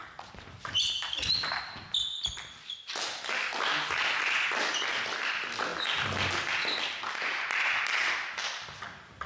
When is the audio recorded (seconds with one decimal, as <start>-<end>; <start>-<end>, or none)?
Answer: 0.0-9.3